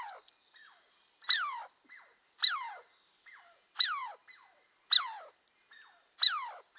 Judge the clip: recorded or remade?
recorded